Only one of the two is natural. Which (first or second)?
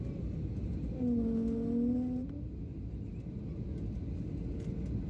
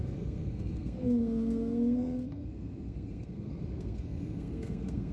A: first